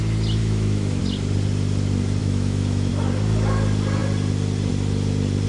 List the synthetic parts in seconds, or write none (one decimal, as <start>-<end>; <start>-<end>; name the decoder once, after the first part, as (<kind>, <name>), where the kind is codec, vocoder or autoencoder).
0.4-1.0 (autoencoder, DAC-VAE); 2.2-2.9